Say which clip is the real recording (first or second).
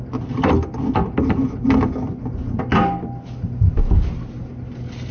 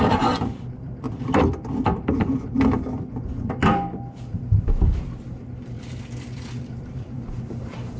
first